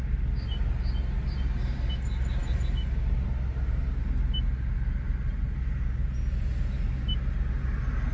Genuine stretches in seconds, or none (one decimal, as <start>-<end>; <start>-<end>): 0.0-8.1